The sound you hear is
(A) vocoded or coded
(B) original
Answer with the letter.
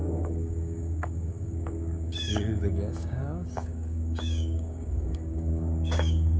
A